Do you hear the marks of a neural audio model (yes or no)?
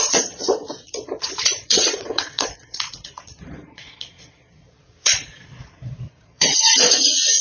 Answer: yes